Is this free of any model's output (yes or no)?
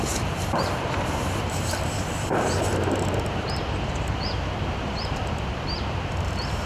no